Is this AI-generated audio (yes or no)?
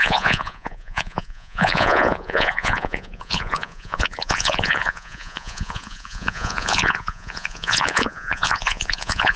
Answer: yes